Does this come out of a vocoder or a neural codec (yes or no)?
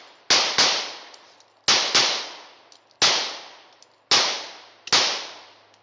no